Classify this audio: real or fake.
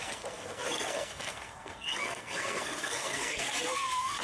fake